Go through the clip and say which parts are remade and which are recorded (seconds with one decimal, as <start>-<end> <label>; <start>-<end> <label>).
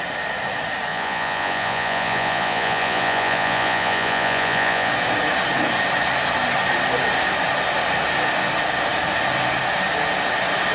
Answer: 0.0-0.9 recorded; 0.9-4.9 remade; 4.9-10.7 recorded